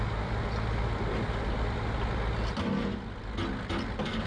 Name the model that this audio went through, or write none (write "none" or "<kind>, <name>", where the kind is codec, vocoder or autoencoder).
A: none